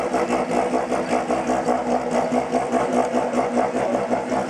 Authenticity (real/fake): real